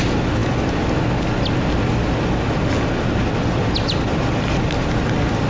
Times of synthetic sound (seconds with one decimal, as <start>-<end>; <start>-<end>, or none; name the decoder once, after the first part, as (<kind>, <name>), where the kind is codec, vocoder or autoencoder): none